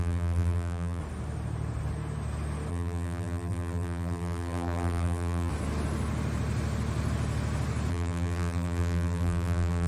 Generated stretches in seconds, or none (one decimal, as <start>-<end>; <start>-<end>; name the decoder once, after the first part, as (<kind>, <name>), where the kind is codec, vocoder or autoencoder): 0.0-1.0 (vocoder, BigVGAN v2); 2.7-5.5; 7.9-9.9